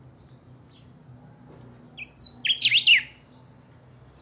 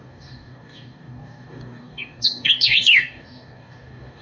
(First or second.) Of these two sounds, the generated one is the second